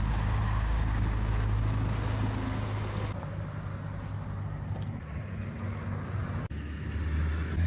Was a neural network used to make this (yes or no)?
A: no